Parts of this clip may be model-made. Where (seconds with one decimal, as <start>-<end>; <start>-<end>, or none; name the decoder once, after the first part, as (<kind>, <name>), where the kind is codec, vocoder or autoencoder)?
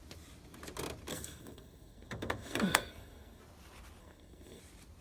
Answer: 1.1-3.4 (codec, SNAC); 4.0-4.6